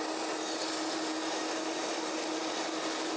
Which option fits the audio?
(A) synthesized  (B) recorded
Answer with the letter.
B